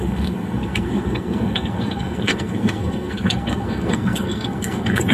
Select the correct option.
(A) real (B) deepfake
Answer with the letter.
B